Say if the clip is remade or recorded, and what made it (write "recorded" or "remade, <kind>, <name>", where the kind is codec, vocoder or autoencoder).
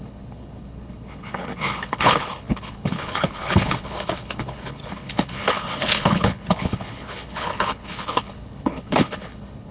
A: remade, codec, HILCodec